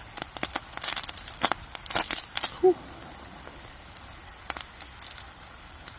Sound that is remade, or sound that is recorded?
remade